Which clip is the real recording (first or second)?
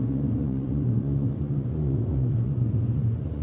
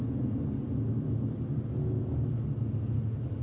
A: second